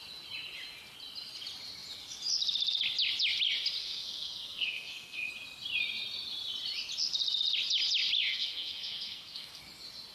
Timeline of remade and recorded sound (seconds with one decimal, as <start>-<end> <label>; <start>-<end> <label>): 0.0-3.8 recorded; 3.8-5.3 remade; 5.3-8.3 recorded; 8.3-9.6 remade; 9.6-10.1 recorded